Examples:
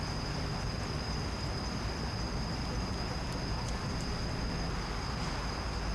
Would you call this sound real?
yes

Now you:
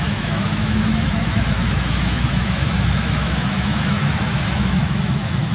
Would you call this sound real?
no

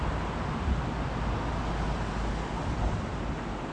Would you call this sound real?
yes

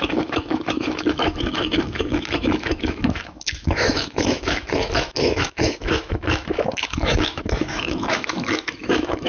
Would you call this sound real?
no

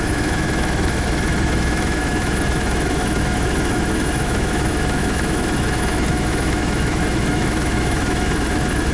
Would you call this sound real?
no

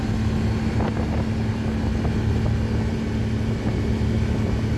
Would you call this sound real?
yes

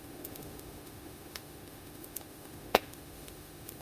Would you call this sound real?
no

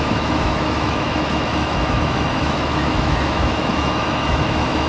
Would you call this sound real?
no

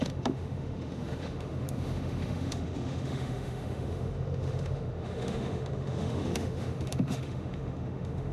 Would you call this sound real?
no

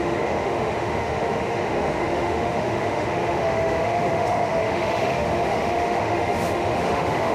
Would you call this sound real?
no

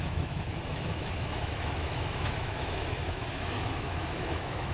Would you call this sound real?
no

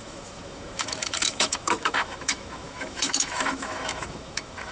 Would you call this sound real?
no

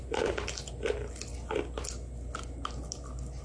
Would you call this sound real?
yes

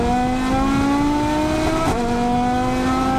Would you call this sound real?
yes